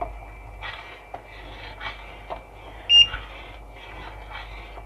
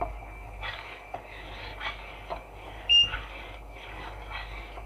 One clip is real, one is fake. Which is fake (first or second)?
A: second